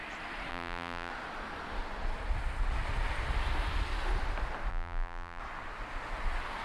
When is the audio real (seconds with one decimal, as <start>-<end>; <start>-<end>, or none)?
0.0-0.5; 1.1-4.7; 5.4-6.6